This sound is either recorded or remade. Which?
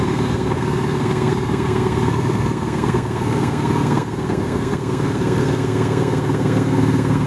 remade